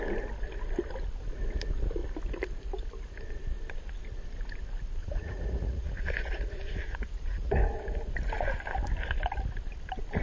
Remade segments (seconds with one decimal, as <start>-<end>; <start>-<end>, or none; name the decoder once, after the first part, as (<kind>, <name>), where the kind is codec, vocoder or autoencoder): 5.0-7.5 (vocoder, Vocos)

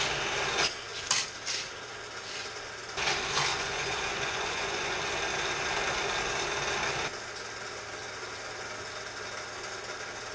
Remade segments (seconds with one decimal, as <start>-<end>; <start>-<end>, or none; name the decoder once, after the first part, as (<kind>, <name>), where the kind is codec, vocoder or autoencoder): 3.5-5.0 (vocoder, Vocos)

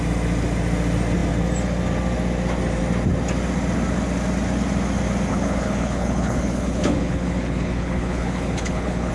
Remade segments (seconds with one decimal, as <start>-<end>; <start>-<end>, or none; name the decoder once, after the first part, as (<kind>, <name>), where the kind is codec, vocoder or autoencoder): 5.3-9.1 (codec, HILCodec)

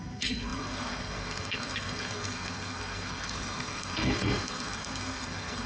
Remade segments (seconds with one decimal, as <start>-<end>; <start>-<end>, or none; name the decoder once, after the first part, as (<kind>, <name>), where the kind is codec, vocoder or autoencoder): 0.0-5.7 (codec, SNAC)

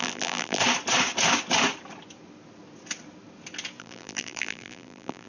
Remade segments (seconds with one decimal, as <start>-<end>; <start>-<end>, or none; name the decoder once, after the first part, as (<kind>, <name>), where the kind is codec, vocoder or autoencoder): 0.0-0.6 (vocoder, BigVGAN v2); 3.8-5.3

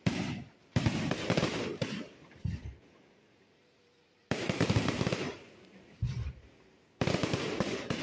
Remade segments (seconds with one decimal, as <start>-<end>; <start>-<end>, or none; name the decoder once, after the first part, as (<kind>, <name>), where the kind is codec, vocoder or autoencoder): 0.0-8.0 (vocoder, BigVGAN v2)